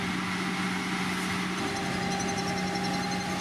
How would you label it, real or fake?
real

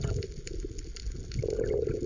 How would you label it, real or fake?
real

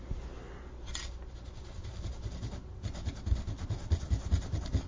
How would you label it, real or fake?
real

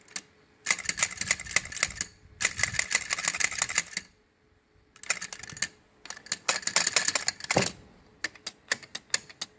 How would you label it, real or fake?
real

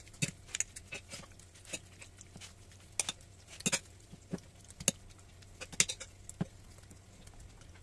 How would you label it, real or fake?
real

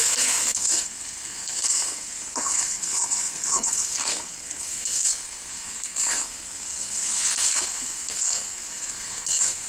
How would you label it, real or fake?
fake